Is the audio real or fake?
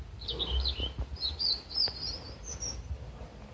real